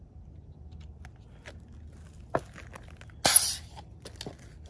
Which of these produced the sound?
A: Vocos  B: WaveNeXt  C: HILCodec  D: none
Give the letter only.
D